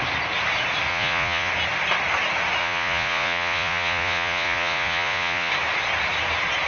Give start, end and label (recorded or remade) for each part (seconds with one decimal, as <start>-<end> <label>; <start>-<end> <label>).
0.0-0.9 recorded; 0.9-1.5 remade; 1.5-2.6 recorded; 2.6-5.5 remade; 5.5-6.7 recorded